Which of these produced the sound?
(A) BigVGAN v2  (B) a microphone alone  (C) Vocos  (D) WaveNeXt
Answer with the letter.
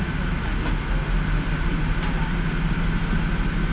B